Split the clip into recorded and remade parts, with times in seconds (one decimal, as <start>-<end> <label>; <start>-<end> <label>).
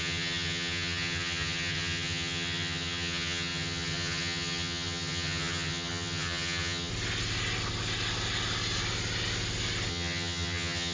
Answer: 0.0-6.9 remade; 6.9-9.9 recorded; 9.9-10.9 remade